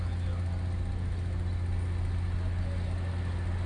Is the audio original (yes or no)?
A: yes